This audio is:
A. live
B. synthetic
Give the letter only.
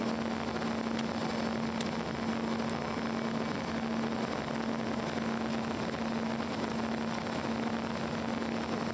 A